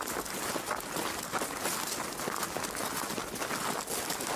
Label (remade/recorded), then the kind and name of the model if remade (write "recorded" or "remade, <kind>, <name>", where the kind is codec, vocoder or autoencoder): recorded